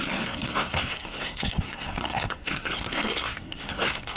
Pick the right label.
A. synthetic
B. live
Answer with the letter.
A